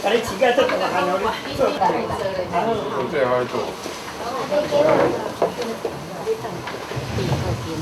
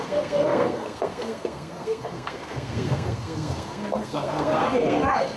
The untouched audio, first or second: first